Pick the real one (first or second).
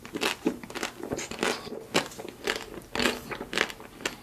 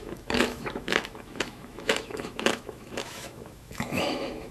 first